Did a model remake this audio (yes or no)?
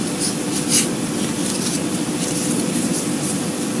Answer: no